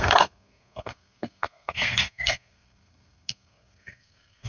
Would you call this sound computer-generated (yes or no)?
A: yes